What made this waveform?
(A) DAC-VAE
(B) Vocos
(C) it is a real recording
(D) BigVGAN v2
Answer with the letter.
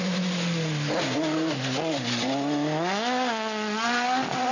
C